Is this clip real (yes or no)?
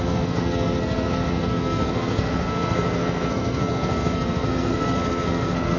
no